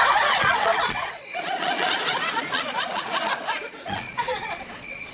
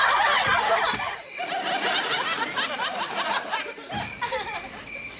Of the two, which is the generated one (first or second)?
first